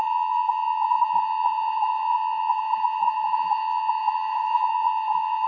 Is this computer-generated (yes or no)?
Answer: yes